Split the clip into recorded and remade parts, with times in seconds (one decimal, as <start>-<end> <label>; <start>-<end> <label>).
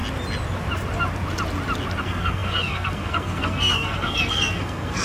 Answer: 0.0-2.0 recorded; 2.0-5.0 remade